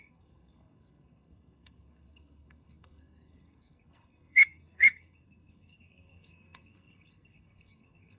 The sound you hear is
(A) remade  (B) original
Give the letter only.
A